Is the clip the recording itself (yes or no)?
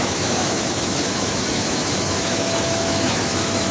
no